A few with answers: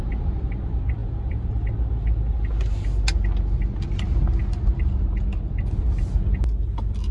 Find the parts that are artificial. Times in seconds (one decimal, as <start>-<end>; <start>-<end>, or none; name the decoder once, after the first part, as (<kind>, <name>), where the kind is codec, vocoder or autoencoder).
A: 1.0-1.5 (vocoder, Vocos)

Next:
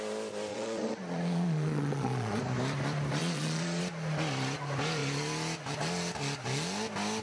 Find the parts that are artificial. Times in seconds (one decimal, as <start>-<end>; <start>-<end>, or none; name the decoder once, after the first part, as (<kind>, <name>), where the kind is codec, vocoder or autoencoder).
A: 0.5-2.4 (vocoder, Vocos); 3.2-3.8

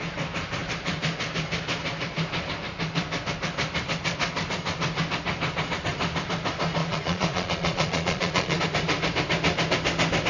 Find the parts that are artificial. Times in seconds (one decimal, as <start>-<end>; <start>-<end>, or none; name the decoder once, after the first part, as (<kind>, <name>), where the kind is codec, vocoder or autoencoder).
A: 6.8-8.6 (vocoder, Vocos)

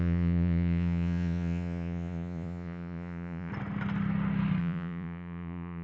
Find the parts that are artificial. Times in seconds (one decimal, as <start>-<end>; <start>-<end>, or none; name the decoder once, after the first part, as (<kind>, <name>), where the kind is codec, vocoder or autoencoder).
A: 0.0-3.5 (vocoder, Vocos); 4.6-5.8